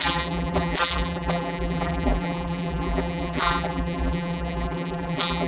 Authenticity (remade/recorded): remade